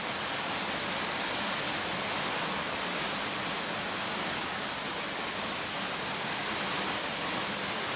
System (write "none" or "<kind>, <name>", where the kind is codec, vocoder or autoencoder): none